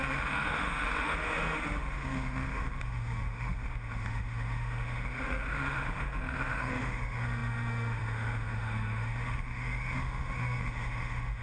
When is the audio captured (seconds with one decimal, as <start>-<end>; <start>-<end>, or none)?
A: none